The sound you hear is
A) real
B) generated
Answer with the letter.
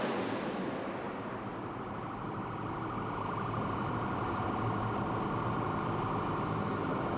A